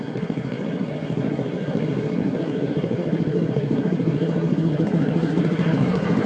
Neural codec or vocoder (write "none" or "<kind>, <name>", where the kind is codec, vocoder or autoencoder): codec, SNAC